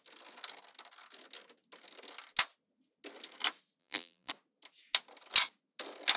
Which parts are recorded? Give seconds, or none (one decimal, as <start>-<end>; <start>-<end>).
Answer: 0.0-3.8; 4.3-6.2